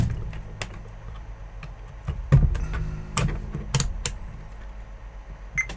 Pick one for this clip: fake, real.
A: real